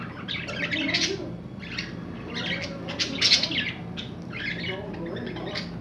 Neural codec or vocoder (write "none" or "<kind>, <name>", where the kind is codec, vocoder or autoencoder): none